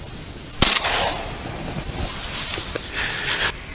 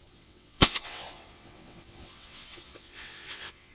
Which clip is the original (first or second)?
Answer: first